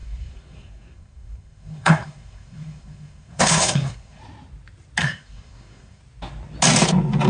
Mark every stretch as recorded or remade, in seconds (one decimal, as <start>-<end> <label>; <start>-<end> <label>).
0.0-4.2 remade; 4.2-5.0 recorded; 5.0-6.0 remade; 6.0-7.3 recorded

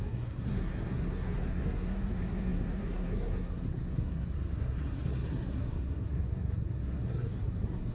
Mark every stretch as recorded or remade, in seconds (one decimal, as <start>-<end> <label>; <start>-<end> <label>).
0.0-7.9 remade

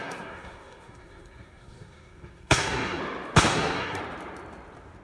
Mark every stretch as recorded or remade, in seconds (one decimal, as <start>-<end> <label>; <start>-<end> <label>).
0.0-3.0 remade; 3.0-3.5 recorded; 3.5-4.0 remade; 4.0-5.0 recorded

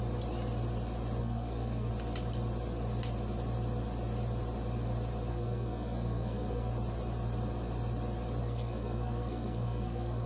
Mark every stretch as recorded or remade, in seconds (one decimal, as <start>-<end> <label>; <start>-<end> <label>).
0.0-1.2 recorded; 1.2-1.9 remade; 1.9-5.3 recorded; 5.3-6.7 remade; 6.7-8.4 recorded; 8.4-10.3 remade